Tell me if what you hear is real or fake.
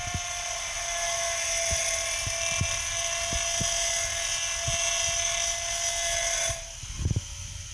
real